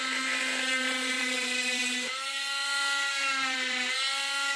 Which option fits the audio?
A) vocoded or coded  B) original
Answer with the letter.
A